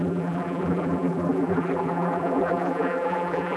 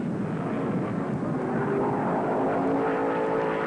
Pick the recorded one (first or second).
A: second